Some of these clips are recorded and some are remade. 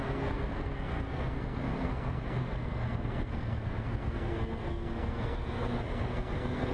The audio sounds remade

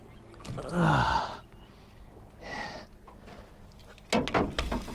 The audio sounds recorded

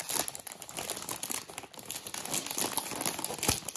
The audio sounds recorded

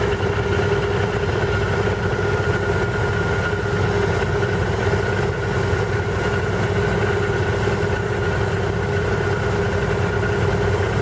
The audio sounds recorded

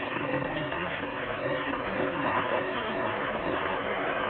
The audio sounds remade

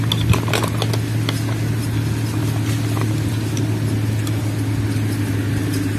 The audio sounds recorded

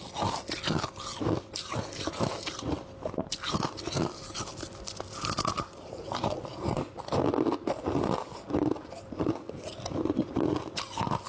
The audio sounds recorded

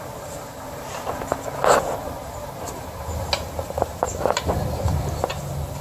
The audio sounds recorded